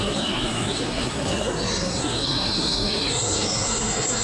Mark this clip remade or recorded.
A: remade